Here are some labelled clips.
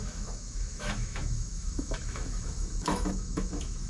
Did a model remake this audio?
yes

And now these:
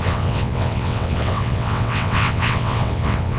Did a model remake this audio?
yes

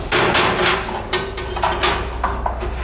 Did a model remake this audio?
no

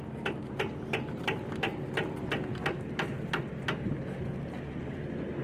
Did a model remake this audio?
no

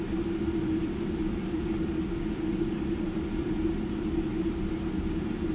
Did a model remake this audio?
no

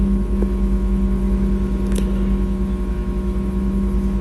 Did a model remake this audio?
yes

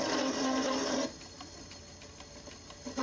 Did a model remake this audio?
no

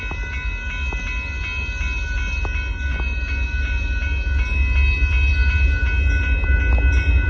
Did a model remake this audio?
no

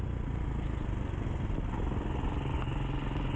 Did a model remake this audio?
no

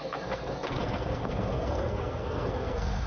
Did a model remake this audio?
yes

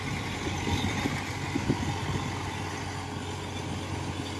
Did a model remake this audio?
no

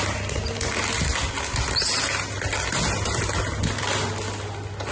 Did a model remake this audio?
no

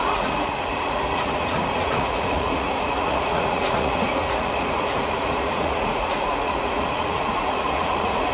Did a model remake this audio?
yes